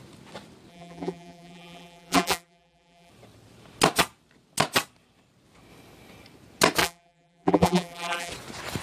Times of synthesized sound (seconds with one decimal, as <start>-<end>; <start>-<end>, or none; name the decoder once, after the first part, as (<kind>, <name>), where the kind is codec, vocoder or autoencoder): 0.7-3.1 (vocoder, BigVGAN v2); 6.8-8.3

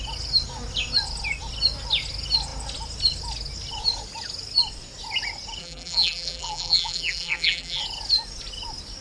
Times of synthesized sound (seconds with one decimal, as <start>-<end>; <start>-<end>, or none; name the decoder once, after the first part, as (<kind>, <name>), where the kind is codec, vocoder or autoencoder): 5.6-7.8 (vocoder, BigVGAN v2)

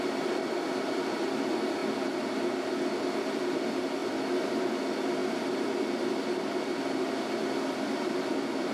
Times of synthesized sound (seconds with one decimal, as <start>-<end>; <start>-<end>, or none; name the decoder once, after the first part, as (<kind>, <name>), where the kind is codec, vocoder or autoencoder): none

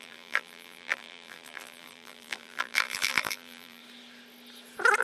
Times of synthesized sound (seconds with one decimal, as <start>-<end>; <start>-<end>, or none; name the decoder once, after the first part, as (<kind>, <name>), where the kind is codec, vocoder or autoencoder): 0.0-3.8 (vocoder, BigVGAN v2)

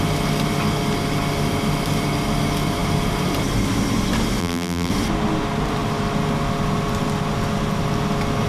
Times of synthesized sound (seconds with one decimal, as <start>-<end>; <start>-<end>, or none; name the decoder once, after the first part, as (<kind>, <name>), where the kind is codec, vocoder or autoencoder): 4.4-4.9 (vocoder, BigVGAN v2)

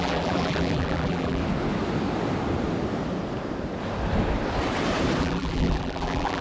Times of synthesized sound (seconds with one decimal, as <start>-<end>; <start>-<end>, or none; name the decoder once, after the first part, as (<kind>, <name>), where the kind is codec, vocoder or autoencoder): 0.0-1.4 (vocoder, BigVGAN v2); 5.2-6.4

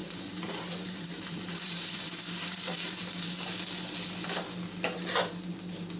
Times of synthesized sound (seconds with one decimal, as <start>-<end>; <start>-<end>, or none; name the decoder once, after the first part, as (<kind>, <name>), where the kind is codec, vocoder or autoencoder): 0.0-3.0 (vocoder, BigVGAN v2)

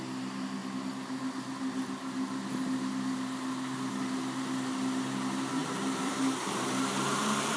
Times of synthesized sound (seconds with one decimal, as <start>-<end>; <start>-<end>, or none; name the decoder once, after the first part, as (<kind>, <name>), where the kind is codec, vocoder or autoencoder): 5.6-7.6 (vocoder, BigVGAN v2)